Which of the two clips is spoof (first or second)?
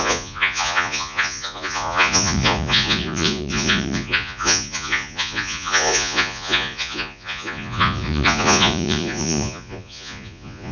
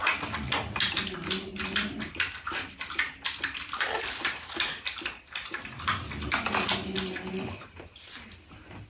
first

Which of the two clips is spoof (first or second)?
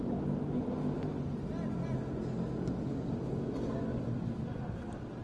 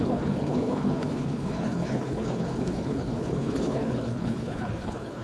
second